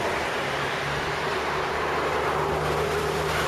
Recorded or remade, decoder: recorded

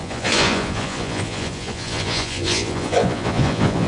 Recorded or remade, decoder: remade, vocoder, Vocos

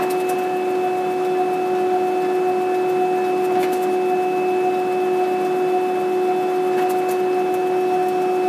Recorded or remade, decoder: recorded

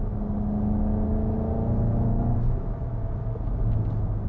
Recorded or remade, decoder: recorded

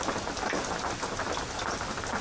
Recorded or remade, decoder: recorded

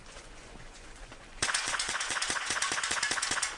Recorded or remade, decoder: remade, vocoder, Vocos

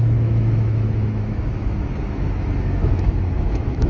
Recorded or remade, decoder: remade, autoencoder, DAC-VAE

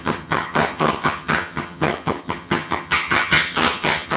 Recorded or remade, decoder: remade, vocoder, HiFi-GAN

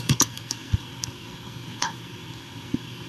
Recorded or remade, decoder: remade, codec, SNAC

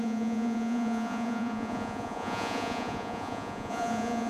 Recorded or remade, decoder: remade, vocoder, Vocos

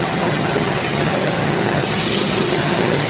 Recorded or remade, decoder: remade, vocoder, HiFi-GAN